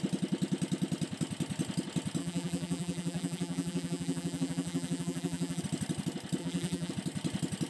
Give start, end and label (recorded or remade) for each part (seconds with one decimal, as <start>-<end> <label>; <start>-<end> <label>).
0.0-2.2 recorded; 2.2-5.6 remade; 5.6-6.4 recorded; 6.4-6.9 remade; 6.9-7.7 recorded